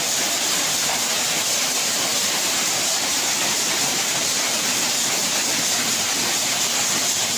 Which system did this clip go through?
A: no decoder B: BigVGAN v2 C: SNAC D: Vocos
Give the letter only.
B